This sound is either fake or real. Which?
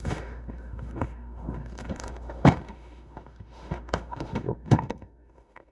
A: fake